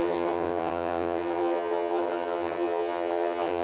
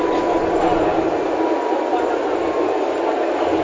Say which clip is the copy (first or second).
first